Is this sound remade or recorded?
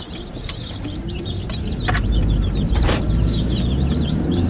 remade